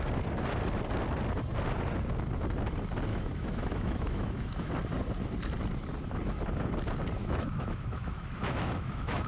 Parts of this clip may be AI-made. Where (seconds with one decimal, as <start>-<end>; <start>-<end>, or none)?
3.1-4.7; 7.2-9.3